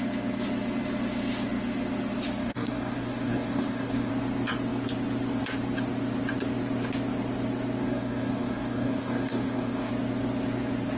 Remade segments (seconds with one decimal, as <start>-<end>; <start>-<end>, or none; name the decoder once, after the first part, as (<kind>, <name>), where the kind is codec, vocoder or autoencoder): 2.4-4.1 (codec, DAC); 7.8-9.9